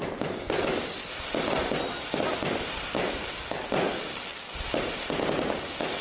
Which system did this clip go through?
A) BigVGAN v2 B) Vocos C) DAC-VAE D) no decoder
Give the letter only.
D